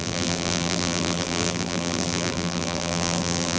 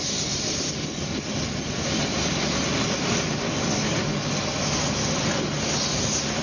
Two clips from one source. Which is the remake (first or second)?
first